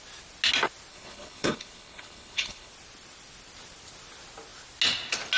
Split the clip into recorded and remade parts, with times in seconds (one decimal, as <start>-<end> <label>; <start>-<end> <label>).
0.0-0.9 recorded; 0.9-2.7 remade; 2.7-5.4 recorded